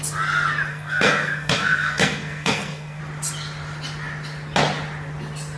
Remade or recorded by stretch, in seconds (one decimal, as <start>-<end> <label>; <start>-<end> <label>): 0.0-0.7 recorded; 0.7-3.0 remade; 3.0-5.6 recorded